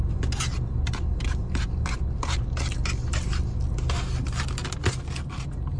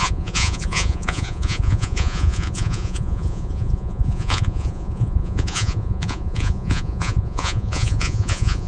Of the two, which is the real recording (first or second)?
first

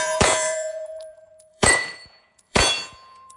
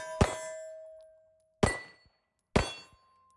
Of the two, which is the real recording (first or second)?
second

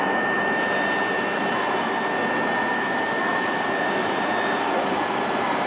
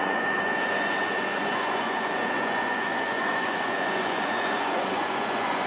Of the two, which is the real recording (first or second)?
first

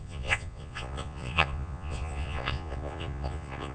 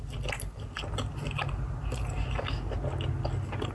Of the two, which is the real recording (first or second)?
second